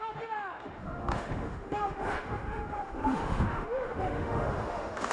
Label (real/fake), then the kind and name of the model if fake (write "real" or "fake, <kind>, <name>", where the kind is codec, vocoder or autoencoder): fake, autoencoder, DAC-VAE